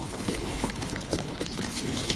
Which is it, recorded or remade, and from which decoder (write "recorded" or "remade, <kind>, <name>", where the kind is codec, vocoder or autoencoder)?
remade, codec, HILCodec